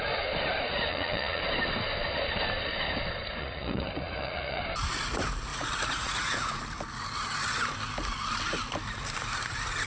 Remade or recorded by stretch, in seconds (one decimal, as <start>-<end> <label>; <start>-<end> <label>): 0.0-0.9 recorded; 0.9-1.4 remade; 1.4-3.4 recorded; 3.4-4.6 remade; 4.6-5.5 recorded; 5.5-6.6 remade; 6.6-9.9 recorded